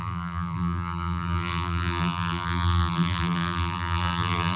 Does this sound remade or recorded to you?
remade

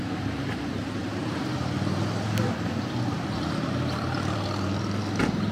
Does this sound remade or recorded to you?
remade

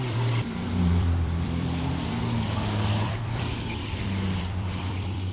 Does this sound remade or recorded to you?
remade